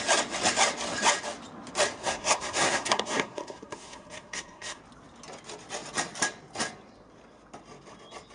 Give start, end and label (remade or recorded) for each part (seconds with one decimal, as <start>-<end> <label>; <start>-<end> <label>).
0.0-2.0 recorded; 2.0-4.8 remade; 4.8-8.3 recorded